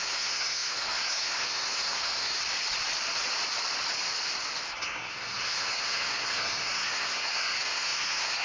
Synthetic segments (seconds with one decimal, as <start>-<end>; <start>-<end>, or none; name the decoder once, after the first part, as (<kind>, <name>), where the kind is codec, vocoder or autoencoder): 0.0-2.4 (codec, SNAC); 4.7-8.4